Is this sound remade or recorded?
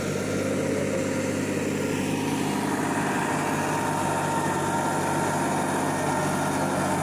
recorded